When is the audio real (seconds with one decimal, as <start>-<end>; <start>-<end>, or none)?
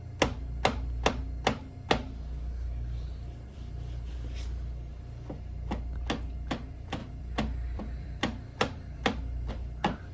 0.0-7.0; 9.5-10.1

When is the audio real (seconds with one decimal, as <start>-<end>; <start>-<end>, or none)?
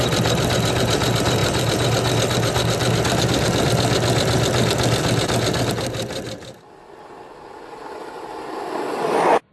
0.0-9.5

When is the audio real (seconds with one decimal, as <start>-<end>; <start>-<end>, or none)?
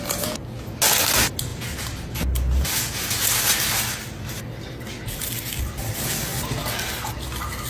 0.0-7.7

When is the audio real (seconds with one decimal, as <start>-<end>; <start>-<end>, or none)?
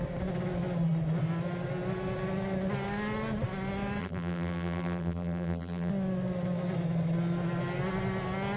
0.0-4.0; 5.9-8.6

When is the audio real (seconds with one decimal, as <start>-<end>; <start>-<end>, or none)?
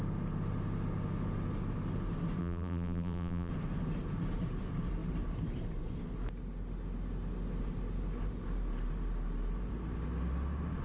0.0-2.4; 3.5-10.8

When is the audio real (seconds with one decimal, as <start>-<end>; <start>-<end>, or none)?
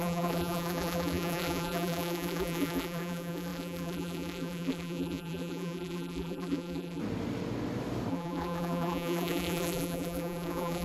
7.0-8.1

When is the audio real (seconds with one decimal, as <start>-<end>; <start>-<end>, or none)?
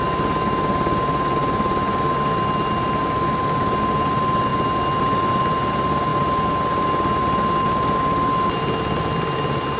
0.0-9.8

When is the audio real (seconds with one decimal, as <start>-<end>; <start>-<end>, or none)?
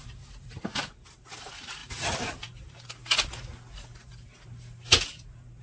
3.0-5.6